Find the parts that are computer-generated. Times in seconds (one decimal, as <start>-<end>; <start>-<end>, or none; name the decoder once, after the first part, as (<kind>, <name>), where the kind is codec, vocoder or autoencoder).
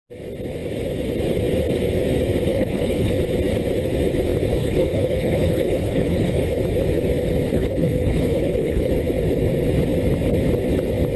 2.5-3.1 (codec, HILCodec); 4.6-6.6; 7.5-8.9